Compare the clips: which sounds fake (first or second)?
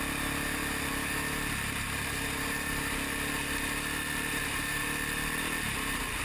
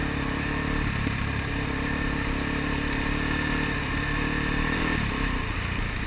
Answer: second